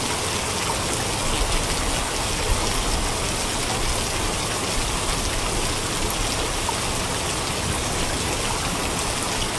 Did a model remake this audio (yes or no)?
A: no